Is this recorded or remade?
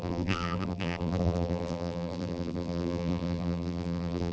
remade